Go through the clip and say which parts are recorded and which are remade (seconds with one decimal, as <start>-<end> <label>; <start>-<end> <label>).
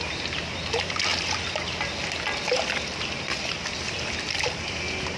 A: 0.0-5.2 recorded